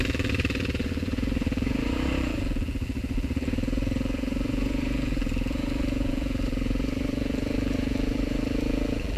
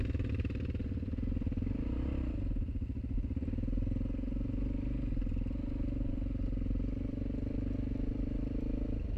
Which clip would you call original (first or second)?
second